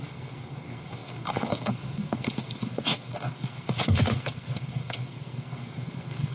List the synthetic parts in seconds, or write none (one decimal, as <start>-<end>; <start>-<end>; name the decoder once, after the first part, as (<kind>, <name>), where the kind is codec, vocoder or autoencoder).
0.0-6.3 (codec, SNAC)